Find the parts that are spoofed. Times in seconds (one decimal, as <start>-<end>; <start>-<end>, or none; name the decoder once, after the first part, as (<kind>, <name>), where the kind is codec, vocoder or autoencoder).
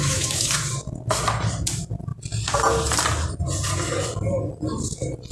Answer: 0.0-0.6 (autoencoder, DAC-VAE)